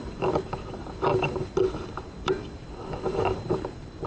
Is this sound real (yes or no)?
no